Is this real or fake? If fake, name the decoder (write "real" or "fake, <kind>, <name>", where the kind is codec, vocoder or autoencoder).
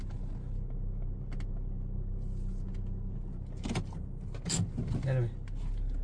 real